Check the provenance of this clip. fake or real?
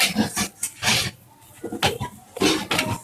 real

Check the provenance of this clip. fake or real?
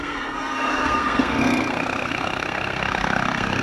fake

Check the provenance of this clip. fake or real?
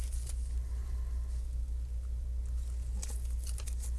real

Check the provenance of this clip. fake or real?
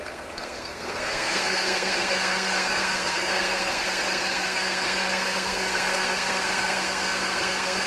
fake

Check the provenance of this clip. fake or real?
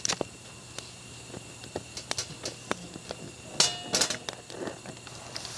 real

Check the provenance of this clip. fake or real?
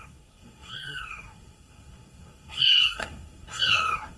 fake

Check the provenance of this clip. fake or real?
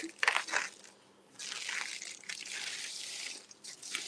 real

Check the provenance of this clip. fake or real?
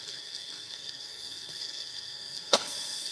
fake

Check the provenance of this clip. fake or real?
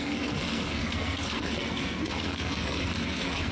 fake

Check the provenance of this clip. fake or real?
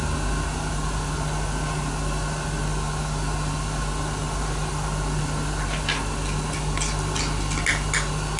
real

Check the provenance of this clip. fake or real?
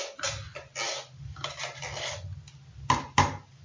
real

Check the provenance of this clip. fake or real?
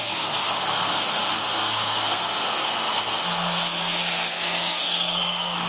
fake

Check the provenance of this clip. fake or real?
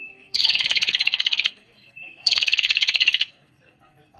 fake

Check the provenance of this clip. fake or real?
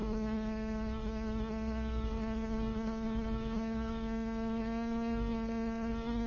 fake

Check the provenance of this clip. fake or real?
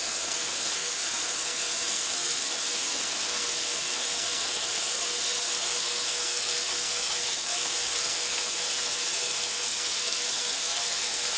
fake